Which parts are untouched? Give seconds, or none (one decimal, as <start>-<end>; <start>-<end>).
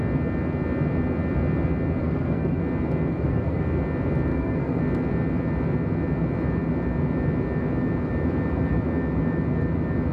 0.0-2.0; 2.6-3.1; 3.6-4.3; 4.8-10.1